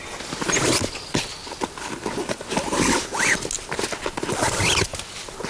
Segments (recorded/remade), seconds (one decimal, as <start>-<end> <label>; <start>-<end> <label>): 0.0-5.5 recorded